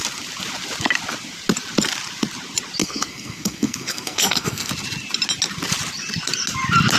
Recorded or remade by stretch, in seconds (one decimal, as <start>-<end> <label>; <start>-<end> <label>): 0.0-2.8 recorded; 2.8-4.7 remade; 4.7-7.0 recorded